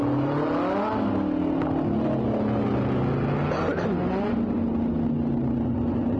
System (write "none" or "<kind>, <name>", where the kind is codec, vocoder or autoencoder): none